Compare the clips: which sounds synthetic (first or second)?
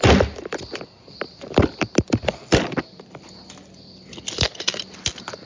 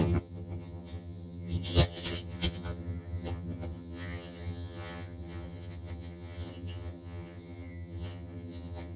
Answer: second